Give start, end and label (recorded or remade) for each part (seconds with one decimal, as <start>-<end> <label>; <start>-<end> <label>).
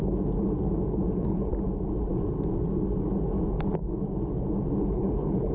0.0-1.1 recorded; 1.1-1.5 remade; 1.5-4.8 recorded; 4.8-5.5 remade